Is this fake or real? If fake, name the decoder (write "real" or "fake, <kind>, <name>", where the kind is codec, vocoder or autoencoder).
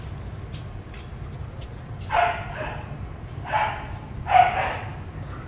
real